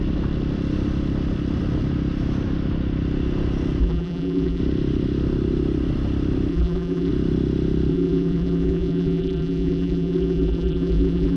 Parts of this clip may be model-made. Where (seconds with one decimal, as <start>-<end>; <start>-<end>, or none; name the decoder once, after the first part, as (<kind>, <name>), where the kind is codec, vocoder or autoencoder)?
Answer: 3.8-4.6 (vocoder, BigVGAN v2); 6.5-7.1; 7.9-11.4